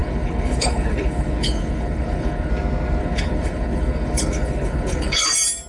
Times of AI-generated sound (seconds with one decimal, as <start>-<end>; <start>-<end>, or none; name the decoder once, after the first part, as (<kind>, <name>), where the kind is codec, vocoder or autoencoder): 0.0-2.5 (codec, HILCodec); 3.0-5.3